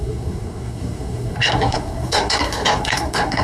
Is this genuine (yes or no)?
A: no